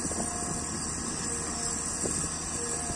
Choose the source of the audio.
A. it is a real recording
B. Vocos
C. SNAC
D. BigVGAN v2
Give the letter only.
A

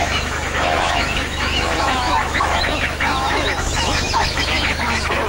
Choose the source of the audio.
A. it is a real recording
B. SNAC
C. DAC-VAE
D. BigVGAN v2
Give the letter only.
C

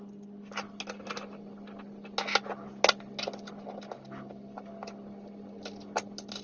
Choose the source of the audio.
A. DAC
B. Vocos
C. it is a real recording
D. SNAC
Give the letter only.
C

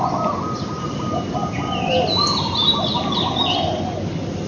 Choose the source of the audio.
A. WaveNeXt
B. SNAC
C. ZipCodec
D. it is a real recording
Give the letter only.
D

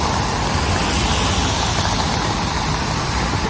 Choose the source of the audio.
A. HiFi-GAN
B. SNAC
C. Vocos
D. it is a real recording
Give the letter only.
D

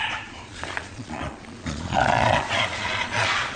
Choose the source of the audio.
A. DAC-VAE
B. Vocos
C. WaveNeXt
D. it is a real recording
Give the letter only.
B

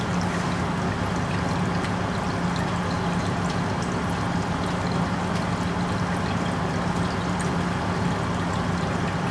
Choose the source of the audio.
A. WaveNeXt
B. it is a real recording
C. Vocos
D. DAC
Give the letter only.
B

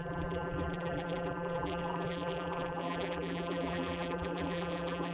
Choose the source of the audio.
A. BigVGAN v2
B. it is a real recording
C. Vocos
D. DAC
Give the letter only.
A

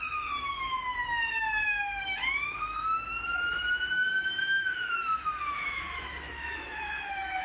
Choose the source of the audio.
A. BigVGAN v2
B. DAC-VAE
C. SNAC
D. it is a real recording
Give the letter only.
B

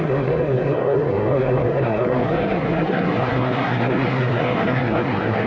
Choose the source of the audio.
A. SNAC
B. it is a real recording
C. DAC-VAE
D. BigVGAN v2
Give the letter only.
A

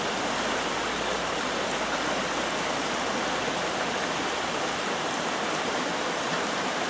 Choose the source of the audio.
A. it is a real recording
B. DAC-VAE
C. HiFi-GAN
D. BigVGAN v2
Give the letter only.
A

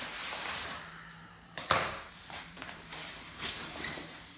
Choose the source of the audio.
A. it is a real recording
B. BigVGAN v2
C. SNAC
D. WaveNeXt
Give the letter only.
B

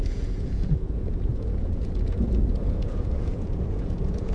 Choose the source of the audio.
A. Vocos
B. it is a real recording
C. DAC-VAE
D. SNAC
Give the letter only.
A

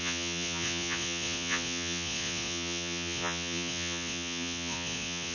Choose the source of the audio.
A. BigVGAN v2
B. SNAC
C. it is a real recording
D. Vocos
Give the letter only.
D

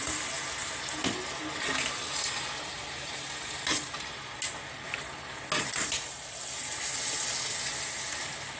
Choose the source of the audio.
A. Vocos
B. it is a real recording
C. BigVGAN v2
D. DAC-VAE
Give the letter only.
B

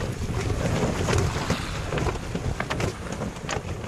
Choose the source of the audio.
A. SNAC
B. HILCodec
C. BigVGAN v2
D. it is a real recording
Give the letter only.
D